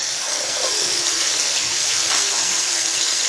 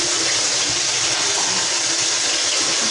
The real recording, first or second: second